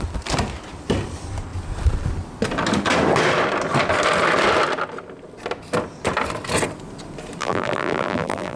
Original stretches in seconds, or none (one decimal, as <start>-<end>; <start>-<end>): 0.0-7.4